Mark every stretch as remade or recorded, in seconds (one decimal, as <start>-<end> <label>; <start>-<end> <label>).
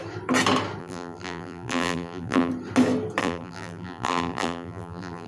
0.0-0.8 recorded; 0.8-2.5 remade; 2.5-3.2 recorded; 3.2-5.3 remade